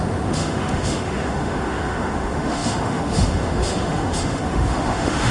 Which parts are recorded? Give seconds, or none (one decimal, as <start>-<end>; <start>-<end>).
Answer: none